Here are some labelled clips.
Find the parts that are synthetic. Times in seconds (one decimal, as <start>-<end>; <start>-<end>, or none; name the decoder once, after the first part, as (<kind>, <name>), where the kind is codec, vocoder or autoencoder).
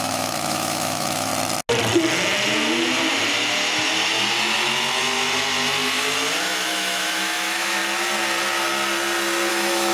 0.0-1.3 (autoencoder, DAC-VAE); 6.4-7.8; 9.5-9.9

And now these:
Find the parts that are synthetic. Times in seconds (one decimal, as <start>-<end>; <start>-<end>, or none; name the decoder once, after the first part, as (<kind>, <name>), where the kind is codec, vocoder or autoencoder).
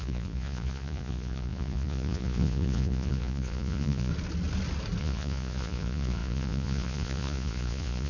0.0-4.1 (vocoder, Vocos); 5.0-8.1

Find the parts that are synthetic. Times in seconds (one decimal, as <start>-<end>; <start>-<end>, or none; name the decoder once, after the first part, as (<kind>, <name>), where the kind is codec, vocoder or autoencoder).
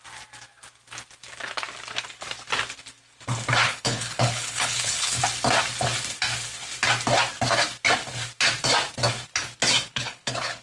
3.6-5.2 (codec, HILCodec); 9.9-10.6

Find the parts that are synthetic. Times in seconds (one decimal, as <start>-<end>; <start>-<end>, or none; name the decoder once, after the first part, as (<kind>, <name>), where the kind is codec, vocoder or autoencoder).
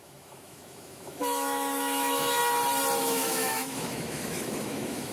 0.0-2.4 (autoencoder, DAC-VAE); 3.0-5.1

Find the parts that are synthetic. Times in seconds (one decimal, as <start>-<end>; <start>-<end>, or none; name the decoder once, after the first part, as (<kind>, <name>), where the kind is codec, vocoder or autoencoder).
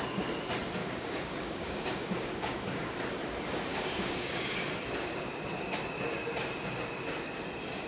0.8-2.9 (codec, DAC); 3.7-4.5